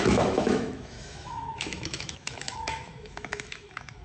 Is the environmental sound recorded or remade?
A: remade